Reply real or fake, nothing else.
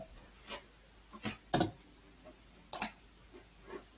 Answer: real